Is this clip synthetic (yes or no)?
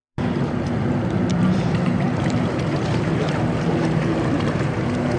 yes